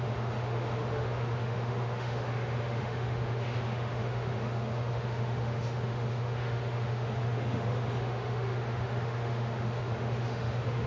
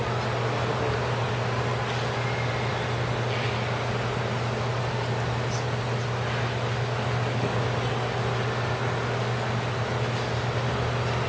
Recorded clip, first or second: second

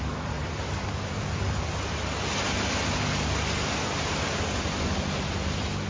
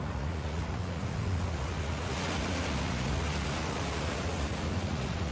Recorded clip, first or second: first